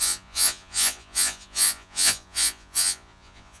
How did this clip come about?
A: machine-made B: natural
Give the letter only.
A